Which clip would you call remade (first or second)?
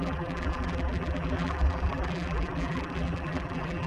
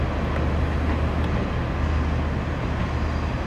first